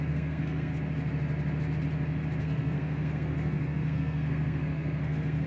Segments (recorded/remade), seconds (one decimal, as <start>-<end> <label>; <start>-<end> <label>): 0.0-0.7 remade; 0.7-2.4 recorded; 2.4-5.5 remade